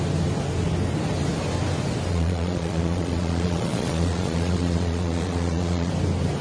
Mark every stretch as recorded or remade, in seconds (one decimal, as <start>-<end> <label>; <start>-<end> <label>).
0.0-2.1 recorded; 2.1-5.9 remade; 5.9-6.4 recorded